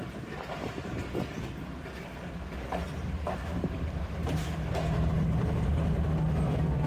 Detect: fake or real real